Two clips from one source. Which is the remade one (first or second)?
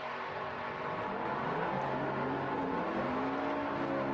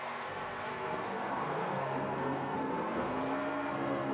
second